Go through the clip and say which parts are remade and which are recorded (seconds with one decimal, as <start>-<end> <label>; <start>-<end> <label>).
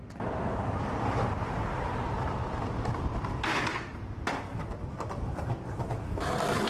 0.0-6.7 recorded